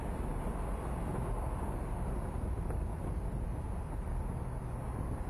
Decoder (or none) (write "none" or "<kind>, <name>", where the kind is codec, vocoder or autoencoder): none